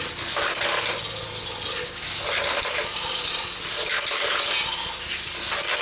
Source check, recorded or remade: recorded